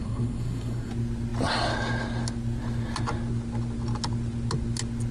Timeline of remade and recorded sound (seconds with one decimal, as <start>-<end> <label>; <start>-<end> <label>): 0.0-0.9 remade; 0.9-5.1 recorded